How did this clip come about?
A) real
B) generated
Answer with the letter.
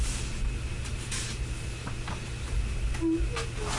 A